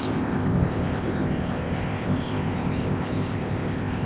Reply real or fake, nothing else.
fake